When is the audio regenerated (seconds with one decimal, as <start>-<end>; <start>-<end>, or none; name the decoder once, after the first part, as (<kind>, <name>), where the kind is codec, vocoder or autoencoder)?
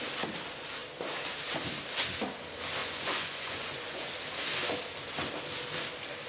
2.8-4.1 (vocoder, Vocos)